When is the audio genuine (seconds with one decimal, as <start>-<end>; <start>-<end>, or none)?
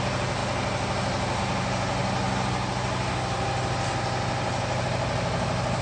0.0-5.8